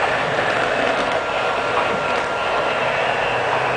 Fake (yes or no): no